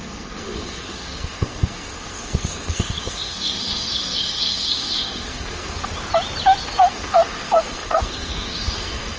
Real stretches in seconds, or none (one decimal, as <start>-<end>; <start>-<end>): 5.8-6.6